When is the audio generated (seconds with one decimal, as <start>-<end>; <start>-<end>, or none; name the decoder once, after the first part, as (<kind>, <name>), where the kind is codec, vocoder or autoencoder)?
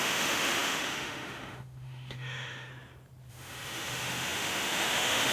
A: 0.0-2.7 (autoencoder, DAC-VAE); 3.3-5.3